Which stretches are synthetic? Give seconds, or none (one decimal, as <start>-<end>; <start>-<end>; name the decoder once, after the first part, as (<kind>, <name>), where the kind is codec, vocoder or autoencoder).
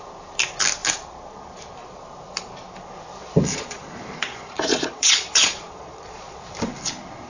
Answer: 3.5-6.4 (vocoder, Vocos)